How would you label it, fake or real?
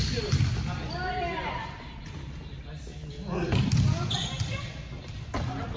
real